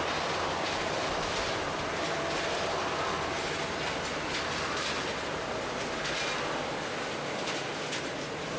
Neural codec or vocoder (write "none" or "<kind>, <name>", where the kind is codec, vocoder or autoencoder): none